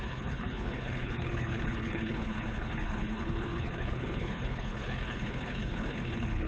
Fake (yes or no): yes